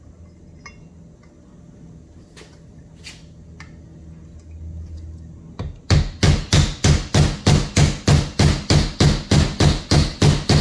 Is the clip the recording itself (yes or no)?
yes